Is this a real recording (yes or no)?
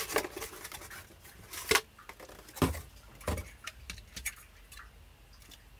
yes